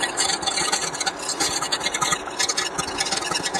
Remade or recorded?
recorded